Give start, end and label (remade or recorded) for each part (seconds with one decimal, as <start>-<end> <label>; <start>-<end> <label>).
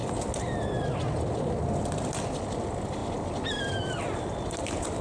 0.0-5.0 recorded